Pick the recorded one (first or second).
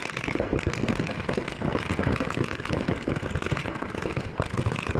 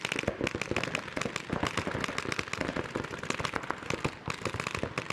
second